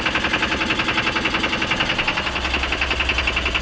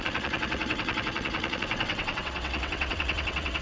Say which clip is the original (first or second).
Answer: first